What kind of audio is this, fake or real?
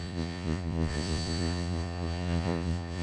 fake